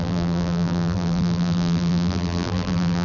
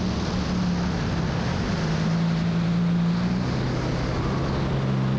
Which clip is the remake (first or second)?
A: first